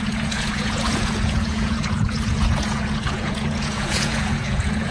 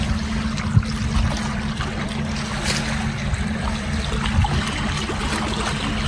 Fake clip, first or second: first